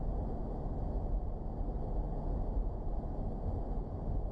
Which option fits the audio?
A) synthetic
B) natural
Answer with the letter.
B